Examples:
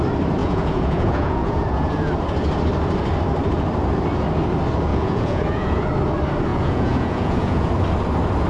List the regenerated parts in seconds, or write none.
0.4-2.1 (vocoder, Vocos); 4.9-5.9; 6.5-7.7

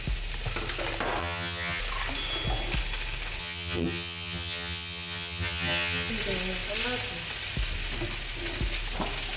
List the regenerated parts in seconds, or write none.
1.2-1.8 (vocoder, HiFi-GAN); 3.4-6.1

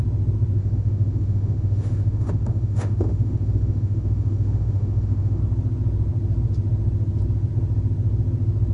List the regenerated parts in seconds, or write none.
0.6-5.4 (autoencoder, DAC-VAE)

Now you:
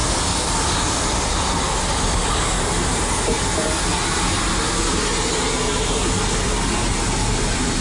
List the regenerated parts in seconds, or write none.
none

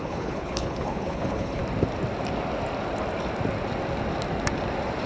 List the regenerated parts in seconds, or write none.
0.0-1.6 (codec, HILCodec)

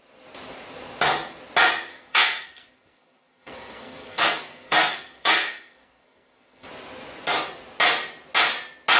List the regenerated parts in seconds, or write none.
1.9-6.7 (codec, SNAC)

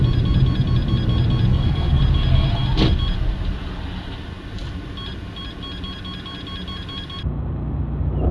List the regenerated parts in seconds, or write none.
1.5-2.0 (codec, SNAC)

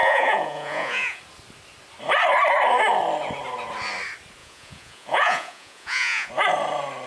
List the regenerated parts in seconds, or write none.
0.0-1.2 (vocoder, Vocos); 4.4-6.3